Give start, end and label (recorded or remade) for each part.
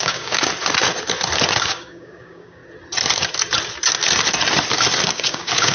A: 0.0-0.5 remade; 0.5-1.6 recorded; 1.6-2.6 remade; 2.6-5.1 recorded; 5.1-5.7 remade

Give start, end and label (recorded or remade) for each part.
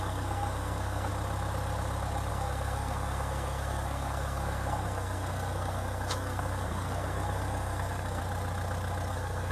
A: 0.0-1.1 remade; 1.1-2.3 recorded; 2.3-8.2 remade; 8.2-9.1 recorded; 9.1-9.5 remade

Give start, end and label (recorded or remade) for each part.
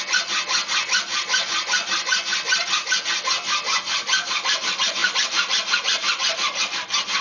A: 0.0-7.2 recorded